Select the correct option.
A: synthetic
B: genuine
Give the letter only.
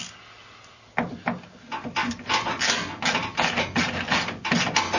B